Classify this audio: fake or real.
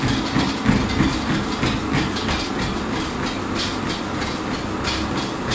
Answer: real